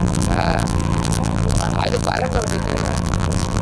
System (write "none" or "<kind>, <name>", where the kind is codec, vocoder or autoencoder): vocoder, BigVGAN v2